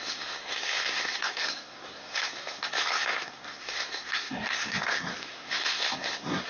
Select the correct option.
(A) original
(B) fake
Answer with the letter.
B